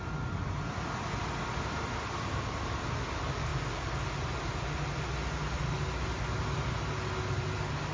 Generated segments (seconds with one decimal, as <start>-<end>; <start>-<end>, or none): none